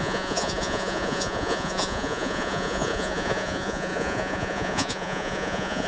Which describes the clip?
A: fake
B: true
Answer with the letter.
A